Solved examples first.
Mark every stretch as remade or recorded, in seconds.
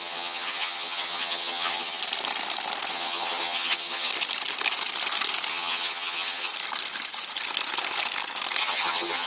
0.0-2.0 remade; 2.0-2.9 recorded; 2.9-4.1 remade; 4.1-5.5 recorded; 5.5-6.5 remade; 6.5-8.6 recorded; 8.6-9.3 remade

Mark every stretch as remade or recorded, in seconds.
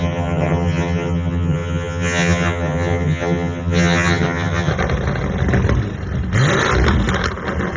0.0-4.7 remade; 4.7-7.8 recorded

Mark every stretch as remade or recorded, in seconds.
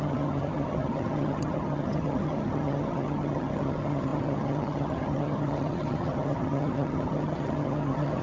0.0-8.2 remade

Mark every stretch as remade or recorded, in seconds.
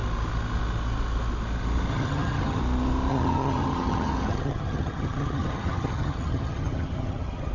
0.0-1.9 recorded; 1.9-2.6 remade; 2.6-3.1 recorded; 3.1-7.5 remade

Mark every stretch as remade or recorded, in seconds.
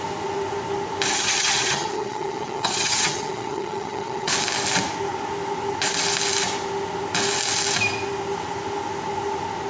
0.0-1.1 recorded; 1.1-4.3 remade; 4.3-9.7 recorded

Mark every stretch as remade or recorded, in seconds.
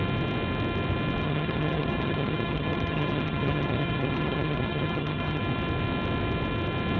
0.0-1.2 recorded; 1.2-5.4 remade; 5.4-7.0 recorded